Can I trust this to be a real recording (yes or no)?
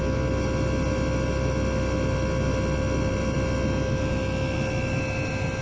yes